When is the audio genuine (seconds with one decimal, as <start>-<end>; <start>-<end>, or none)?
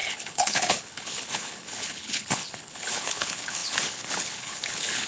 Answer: none